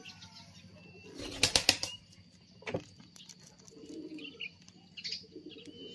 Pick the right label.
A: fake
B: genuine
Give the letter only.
B